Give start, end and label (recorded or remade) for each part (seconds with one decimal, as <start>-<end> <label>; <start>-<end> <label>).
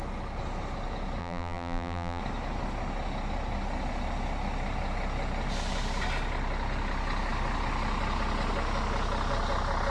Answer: 0.0-1.2 recorded; 1.2-2.2 remade; 2.2-9.9 recorded